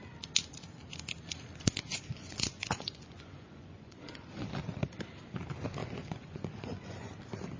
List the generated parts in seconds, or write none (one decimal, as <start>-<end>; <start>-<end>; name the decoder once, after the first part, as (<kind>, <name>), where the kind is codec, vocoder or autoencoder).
1.9-4.5 (vocoder, Vocos); 5.8-7.1